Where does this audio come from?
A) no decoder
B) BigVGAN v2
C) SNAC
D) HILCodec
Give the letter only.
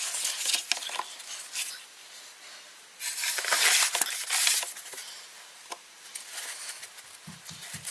A